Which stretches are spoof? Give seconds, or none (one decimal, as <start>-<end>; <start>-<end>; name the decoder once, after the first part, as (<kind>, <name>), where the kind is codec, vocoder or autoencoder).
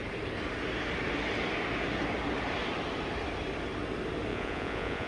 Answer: 4.3-5.1 (vocoder, Vocos)